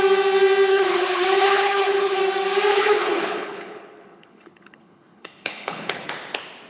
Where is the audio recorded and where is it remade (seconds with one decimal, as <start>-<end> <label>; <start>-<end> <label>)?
0.0-0.7 recorded; 0.7-2.2 remade; 2.2-2.7 recorded; 2.7-6.1 remade; 6.1-6.7 recorded